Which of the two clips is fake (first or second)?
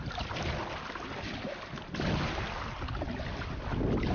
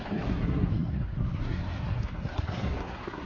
second